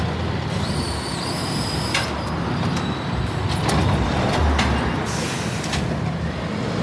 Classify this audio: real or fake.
real